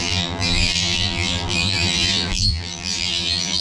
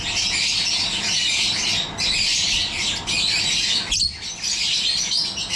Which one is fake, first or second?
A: first